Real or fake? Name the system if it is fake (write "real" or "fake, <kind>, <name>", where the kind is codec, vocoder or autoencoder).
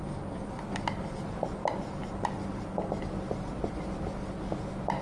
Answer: real